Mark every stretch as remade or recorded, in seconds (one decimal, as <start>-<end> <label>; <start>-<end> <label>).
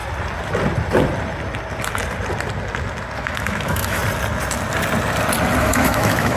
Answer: 0.0-3.2 recorded; 3.2-4.0 remade; 4.0-5.6 recorded; 5.6-6.4 remade